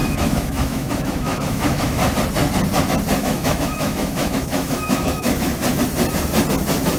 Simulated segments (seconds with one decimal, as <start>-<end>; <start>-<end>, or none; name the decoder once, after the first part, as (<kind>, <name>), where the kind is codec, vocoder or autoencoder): 0.0-2.0 (autoencoder, DAC-VAE); 3.2-5.5